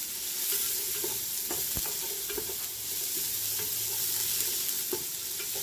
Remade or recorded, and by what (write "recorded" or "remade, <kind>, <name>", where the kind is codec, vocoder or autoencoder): recorded